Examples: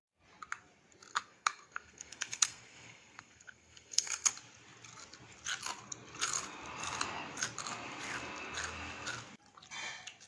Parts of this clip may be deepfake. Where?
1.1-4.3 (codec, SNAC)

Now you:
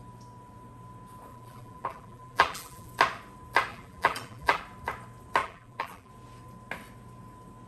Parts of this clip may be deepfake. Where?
1.3-2.9 (vocoder, BigVGAN v2); 3.7-4.6; 5.4-6.1

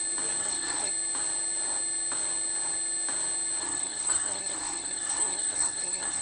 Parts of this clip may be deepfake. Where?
0.4-0.9 (codec, SNAC); 3.6-6.2

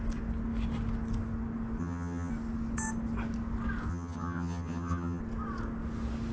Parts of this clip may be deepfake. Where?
1.8-2.3 (vocoder, HiFi-GAN); 3.9-5.2

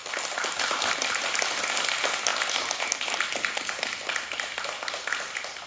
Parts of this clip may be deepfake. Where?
none

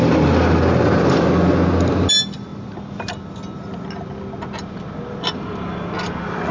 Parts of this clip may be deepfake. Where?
none